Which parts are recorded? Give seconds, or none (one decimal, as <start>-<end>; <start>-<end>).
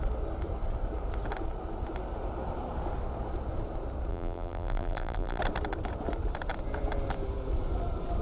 0.0-4.1; 5.4-8.2